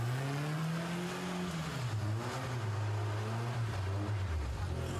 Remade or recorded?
recorded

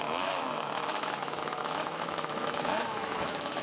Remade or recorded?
remade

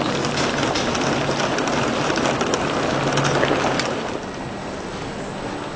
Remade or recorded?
recorded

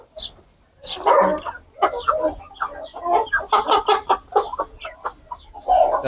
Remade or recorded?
recorded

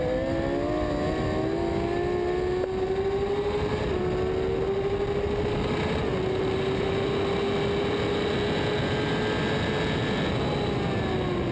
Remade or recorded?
recorded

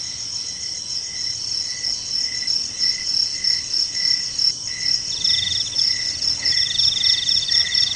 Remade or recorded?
recorded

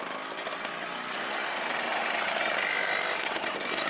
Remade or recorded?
recorded